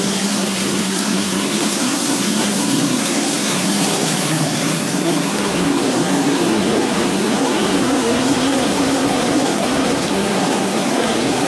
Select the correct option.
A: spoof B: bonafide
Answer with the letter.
A